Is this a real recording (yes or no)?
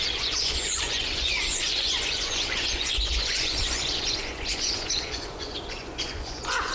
no